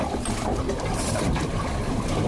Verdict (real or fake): real